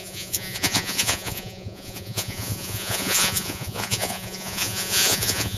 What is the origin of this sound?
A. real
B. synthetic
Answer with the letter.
B